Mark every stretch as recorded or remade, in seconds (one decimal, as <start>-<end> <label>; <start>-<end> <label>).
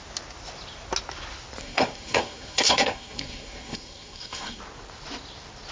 0.0-1.6 recorded; 1.6-4.6 remade; 4.6-5.7 recorded